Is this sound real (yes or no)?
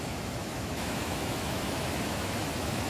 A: no